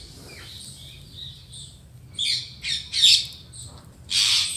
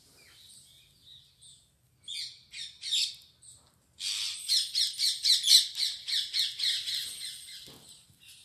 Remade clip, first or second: first